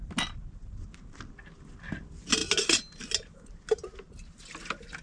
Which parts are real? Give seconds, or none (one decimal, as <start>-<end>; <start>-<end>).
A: 0.0-5.0